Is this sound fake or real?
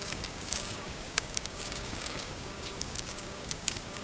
fake